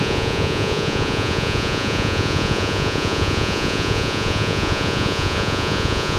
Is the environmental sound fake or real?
fake